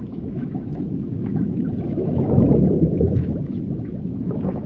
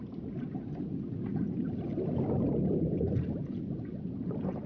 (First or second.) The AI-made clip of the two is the first